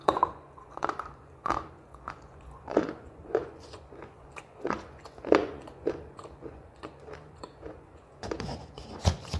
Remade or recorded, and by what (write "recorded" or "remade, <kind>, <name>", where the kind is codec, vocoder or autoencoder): remade, vocoder, Vocos